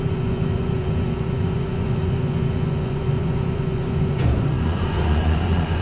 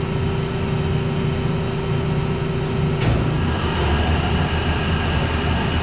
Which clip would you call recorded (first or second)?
second